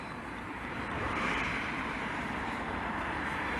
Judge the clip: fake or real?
fake